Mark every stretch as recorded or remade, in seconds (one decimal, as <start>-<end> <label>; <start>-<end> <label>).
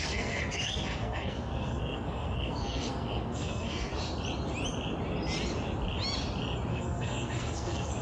0.0-3.9 remade; 3.9-6.7 recorded; 6.7-8.0 remade